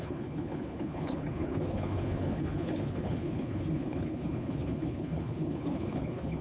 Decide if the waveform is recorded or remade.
remade